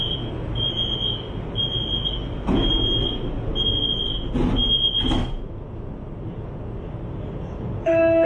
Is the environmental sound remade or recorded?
recorded